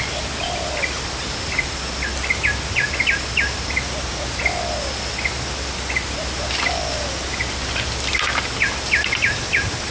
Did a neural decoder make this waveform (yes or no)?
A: no